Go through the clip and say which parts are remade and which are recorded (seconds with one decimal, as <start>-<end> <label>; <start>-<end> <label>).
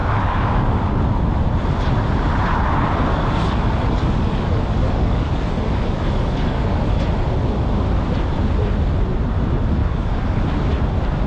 0.0-0.8 remade; 0.8-3.1 recorded; 3.1-7.0 remade; 7.0-9.8 recorded; 9.8-10.4 remade; 10.4-11.3 recorded